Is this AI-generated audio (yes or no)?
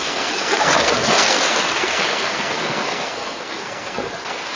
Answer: yes